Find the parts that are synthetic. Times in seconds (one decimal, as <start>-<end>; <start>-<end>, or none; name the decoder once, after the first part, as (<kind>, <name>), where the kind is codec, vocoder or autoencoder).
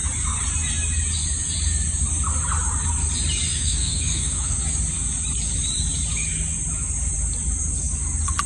3.5-4.6 (autoencoder, DAC-VAE)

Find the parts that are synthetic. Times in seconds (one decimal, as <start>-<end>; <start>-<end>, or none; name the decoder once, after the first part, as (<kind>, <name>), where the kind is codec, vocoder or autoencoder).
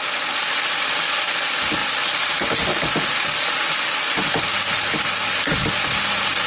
none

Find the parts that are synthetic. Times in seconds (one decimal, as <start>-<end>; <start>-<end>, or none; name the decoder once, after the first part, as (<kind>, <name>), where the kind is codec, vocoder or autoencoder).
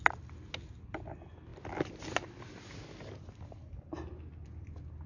none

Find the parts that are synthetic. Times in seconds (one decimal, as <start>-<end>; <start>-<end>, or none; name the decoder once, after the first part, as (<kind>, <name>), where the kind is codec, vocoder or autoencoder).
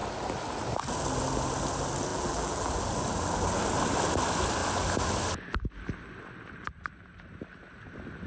2.1-2.8 (vocoder, BigVGAN v2)